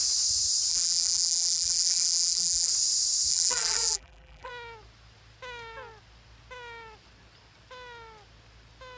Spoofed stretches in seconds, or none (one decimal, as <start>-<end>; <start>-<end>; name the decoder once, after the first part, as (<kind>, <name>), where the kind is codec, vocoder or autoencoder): 0.7-2.7 (vocoder, BigVGAN v2); 3.3-4.5